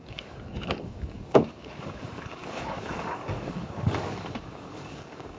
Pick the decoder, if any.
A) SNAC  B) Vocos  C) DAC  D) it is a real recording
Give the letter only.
C